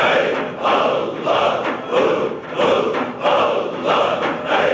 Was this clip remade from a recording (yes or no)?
yes